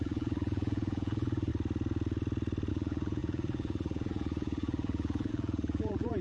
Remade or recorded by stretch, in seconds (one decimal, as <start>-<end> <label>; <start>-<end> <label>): 0.0-1.5 remade; 1.5-2.7 recorded; 2.7-6.2 remade